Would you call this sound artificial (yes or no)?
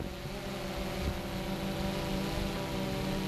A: no